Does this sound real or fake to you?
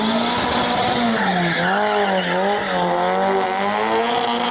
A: real